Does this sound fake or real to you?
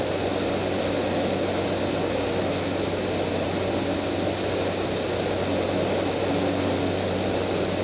real